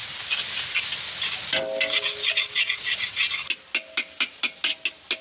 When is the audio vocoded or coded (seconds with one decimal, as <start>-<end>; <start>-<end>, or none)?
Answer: none

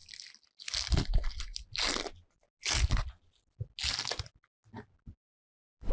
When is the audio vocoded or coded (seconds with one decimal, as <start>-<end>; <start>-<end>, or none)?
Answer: none

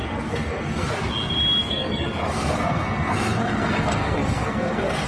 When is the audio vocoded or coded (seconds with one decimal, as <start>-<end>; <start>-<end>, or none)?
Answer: 0.0-0.9; 1.6-5.1

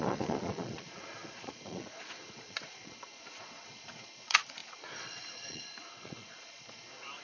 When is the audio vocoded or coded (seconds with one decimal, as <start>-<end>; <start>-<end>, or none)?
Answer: 0.0-7.2